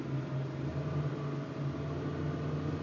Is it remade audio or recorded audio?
recorded